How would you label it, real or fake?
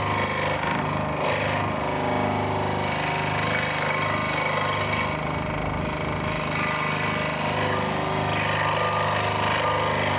real